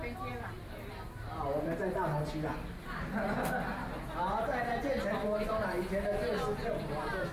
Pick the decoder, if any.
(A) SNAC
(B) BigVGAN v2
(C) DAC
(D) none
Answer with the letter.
D